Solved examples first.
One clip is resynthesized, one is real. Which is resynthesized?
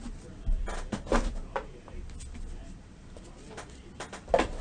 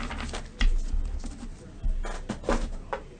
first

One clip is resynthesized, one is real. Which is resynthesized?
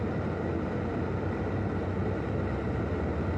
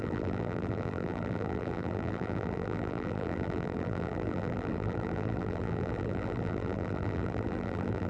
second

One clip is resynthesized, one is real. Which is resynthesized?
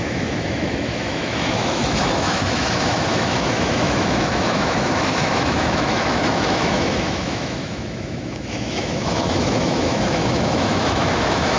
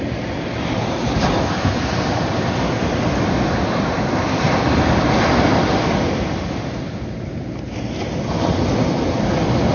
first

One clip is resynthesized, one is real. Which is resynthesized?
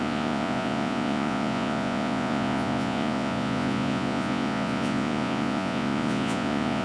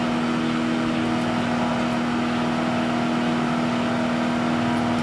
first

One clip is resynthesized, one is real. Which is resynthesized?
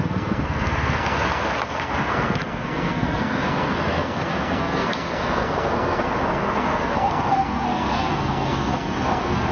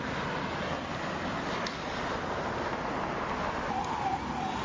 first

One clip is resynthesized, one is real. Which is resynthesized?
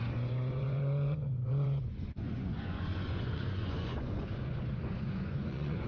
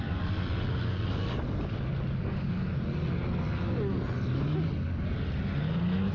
first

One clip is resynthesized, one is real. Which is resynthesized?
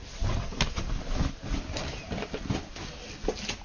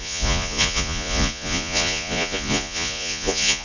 second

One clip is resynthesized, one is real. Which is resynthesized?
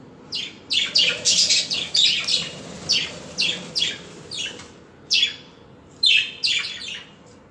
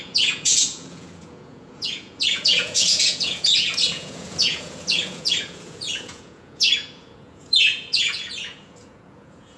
second